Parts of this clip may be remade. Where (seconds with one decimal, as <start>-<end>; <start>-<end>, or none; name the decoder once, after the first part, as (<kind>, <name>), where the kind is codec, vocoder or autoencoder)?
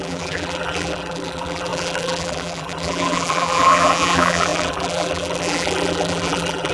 0.0-6.7 (vocoder, BigVGAN v2)